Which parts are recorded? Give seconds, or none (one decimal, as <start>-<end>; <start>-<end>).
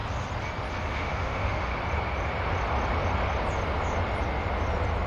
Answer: 0.0-0.8; 1.7-5.1